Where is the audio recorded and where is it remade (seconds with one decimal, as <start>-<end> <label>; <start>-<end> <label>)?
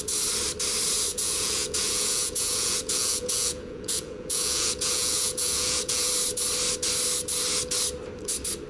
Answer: 0.0-1.1 recorded; 1.1-6.1 remade; 6.1-8.7 recorded